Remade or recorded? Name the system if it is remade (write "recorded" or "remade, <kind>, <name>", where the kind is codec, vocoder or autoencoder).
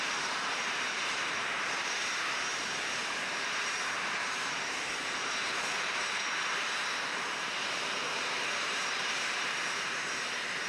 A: remade, vocoder, BigVGAN v2